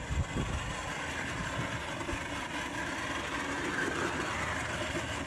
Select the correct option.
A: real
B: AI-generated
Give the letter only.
A